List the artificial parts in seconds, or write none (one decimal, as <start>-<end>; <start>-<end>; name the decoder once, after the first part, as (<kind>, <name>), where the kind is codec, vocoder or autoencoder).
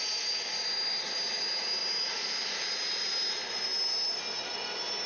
1.8-3.3 (vocoder, BigVGAN v2)